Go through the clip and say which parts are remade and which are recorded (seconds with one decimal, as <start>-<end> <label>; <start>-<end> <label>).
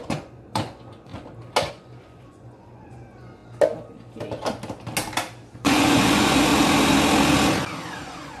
0.0-1.1 remade; 1.1-1.7 recorded; 1.7-3.4 remade; 3.4-5.5 recorded; 5.5-6.5 remade; 6.5-7.8 recorded; 7.8-8.4 remade